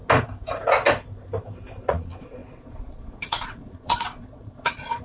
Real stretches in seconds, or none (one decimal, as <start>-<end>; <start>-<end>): 0.0-1.8